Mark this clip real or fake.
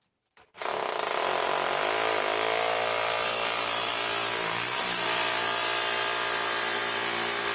real